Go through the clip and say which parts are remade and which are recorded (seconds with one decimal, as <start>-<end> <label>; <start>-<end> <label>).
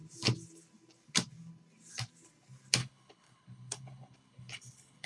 0.0-2.8 recorded; 2.8-5.1 remade